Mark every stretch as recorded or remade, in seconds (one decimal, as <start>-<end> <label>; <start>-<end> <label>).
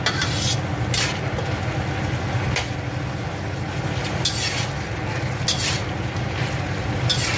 0.0-7.4 recorded